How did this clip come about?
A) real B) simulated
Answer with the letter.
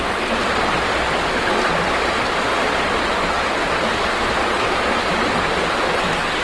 A